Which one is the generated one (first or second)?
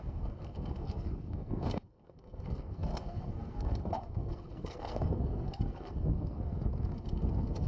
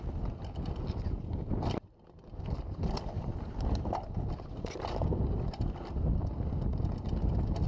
first